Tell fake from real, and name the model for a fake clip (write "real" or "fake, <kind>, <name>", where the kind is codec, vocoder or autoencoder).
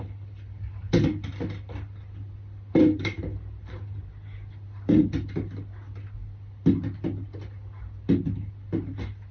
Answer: real